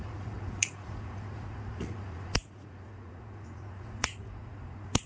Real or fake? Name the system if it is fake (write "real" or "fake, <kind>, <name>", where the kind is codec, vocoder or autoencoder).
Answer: fake, vocoder, Vocos